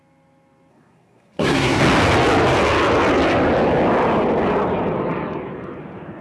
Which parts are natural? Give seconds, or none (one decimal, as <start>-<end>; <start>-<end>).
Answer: 0.0-0.7; 1.8-6.2

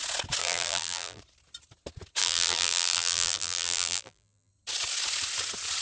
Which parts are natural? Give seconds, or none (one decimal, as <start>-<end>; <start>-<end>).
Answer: 0.0-0.4; 1.2-2.2; 4.5-5.8

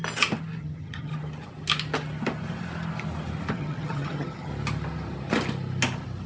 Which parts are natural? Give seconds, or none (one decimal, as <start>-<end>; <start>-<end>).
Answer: 0.0-0.6; 1.1-3.5; 4.5-6.3

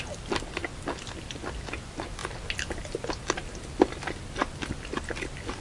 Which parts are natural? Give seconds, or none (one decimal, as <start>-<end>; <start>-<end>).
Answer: 0.0-0.6; 1.7-4.4

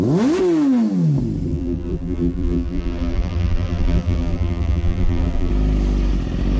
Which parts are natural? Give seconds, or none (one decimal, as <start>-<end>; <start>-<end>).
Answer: 0.0-1.5; 5.5-6.6

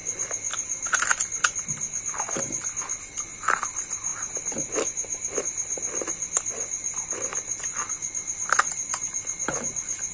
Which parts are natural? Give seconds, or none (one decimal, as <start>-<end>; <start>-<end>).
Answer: 0.0-10.1

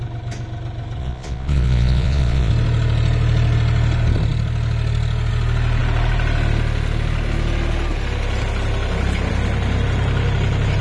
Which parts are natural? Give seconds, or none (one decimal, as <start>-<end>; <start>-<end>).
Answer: 0.0-1.0; 2.5-10.8

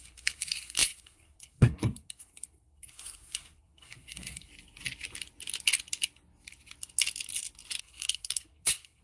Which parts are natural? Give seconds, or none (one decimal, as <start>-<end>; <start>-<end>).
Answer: 4.5-7.8